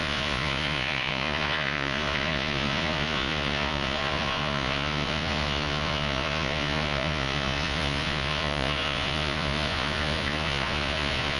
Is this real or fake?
fake